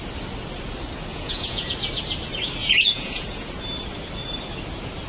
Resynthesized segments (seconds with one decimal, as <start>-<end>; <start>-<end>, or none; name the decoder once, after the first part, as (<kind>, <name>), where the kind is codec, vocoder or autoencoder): 1.1-1.7 (vocoder, Vocos); 2.6-3.5